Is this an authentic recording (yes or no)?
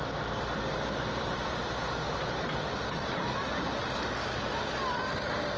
no